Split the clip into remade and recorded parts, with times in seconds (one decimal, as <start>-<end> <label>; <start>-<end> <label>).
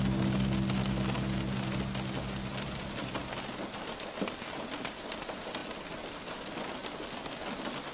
0.0-2.5 recorded; 2.5-3.2 remade; 3.2-7.9 recorded